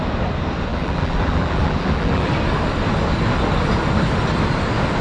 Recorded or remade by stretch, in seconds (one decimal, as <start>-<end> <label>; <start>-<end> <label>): 0.0-0.7 recorded; 0.7-2.3 remade; 2.3-5.0 recorded